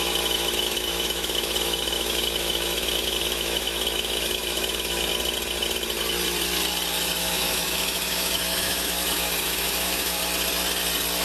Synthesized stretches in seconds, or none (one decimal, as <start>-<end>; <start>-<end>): 0.0-5.1; 7.2-10.2